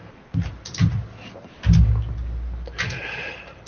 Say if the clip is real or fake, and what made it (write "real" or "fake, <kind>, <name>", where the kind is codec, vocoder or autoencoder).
real